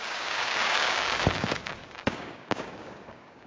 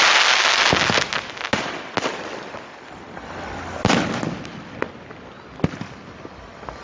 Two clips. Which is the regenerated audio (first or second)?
first